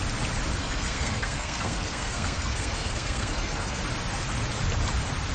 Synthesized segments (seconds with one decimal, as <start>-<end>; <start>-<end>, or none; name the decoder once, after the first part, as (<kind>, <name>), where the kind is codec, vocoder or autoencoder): 0.6-3.8 (codec, SNAC)